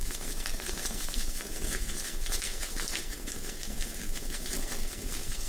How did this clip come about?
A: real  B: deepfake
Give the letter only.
B